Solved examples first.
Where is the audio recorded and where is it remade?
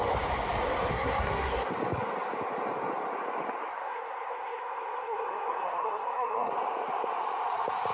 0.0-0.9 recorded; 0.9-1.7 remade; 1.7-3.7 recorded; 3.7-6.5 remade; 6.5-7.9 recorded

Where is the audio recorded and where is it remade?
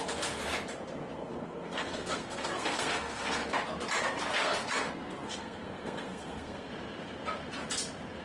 0.0-0.4 remade; 0.4-1.2 recorded; 1.2-3.4 remade; 3.4-4.2 recorded; 4.2-6.7 remade; 6.7-8.2 recorded